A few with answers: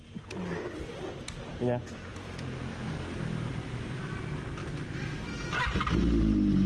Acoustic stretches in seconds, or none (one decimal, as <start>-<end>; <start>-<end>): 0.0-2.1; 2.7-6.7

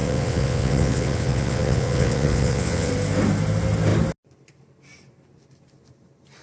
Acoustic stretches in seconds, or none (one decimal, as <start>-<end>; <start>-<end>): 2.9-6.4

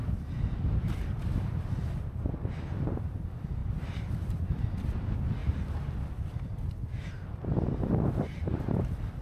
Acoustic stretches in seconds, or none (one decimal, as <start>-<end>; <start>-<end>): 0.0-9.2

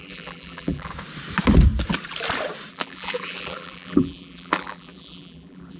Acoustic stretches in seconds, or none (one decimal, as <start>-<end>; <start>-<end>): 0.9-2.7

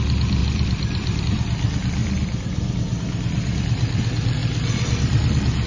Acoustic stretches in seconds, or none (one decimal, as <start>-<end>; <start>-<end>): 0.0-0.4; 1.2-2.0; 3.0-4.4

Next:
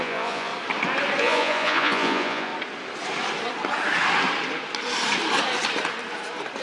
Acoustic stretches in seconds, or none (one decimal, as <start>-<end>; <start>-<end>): 0.5-1.2; 2.5-6.6

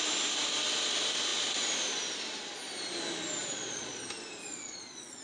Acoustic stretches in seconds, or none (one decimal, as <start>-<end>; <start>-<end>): 0.0-3.4; 4.0-4.4

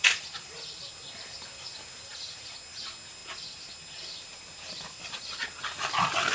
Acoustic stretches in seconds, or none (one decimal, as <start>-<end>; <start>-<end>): 0.9-3.2; 5.2-6.3